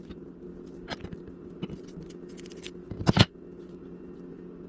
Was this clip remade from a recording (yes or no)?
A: no